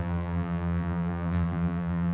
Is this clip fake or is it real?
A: fake